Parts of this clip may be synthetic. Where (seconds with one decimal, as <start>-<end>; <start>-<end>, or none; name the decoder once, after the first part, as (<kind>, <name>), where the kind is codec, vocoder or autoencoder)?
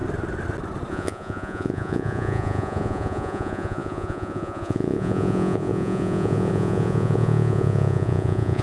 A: 0.9-8.6 (vocoder, Vocos)